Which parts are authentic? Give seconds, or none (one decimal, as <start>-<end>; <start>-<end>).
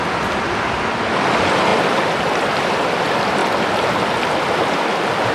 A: 0.0-1.7; 3.0-5.3